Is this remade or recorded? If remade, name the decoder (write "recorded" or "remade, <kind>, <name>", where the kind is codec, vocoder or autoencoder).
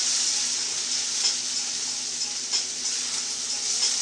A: recorded